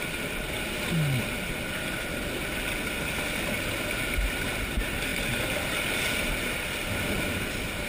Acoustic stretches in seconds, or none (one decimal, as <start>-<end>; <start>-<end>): 0.0-7.9